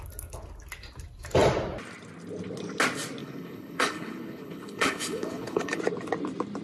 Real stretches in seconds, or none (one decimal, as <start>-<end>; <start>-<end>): 0.0-3.2; 5.8-6.6